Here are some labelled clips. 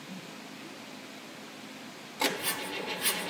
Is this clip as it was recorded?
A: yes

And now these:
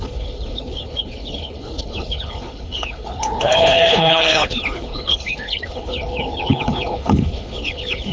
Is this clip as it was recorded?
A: no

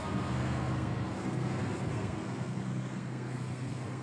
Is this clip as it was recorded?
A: no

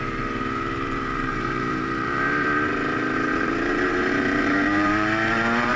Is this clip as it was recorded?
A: no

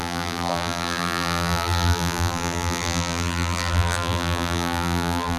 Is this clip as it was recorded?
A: no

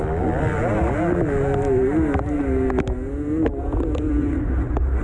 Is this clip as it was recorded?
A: yes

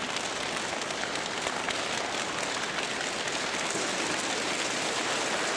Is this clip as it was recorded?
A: yes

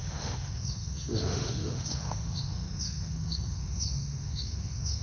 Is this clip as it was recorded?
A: no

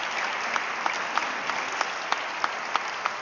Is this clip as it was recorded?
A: yes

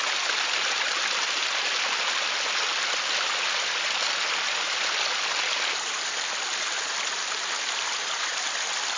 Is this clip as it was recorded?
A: yes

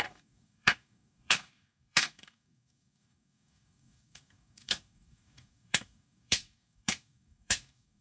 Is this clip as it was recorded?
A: no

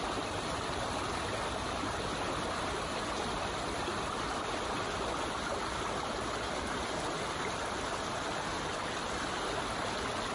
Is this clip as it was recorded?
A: yes